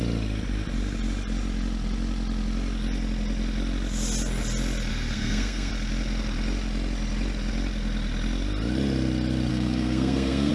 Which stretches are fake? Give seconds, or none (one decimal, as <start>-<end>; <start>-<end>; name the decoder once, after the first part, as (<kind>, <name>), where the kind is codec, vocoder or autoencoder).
4.9-5.7 (codec, SNAC); 9.5-10.5

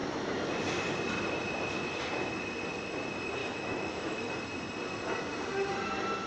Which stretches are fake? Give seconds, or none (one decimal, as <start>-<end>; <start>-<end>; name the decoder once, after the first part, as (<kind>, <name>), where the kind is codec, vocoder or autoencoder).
3.4-4.3 (autoencoder, DAC-VAE)